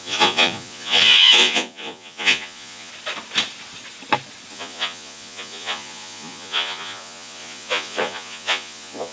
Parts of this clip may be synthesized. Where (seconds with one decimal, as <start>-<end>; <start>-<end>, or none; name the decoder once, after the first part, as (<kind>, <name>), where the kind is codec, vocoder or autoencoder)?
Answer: 0.0-2.9 (vocoder, Vocos); 4.5-9.1